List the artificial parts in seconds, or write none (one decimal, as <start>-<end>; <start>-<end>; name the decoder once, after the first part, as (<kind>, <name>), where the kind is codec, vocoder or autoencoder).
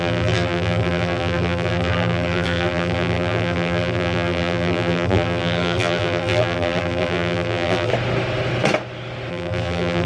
0.0-7.9 (vocoder, BigVGAN v2); 9.3-10.1